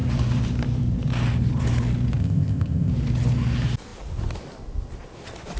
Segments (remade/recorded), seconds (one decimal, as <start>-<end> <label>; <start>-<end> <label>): 0.0-2.2 recorded; 2.2-2.9 remade; 2.9-5.6 recorded